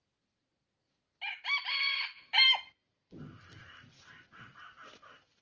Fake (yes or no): no